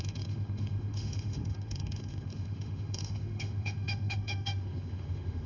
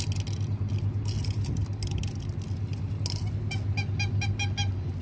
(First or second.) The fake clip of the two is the first